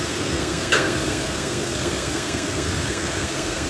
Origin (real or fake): fake